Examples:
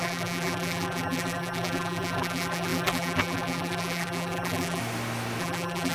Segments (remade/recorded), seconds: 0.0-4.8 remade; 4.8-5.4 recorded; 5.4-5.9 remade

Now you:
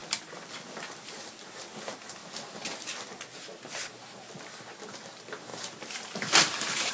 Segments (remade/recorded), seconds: 0.0-5.5 recorded; 5.5-6.9 remade